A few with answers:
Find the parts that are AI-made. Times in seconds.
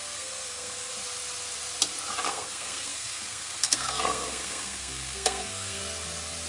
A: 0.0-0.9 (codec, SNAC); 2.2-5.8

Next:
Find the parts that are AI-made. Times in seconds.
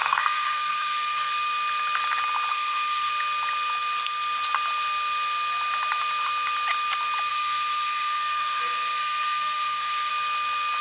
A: 0.0-1.3 (codec, SNAC); 2.5-3.1; 7.3-10.1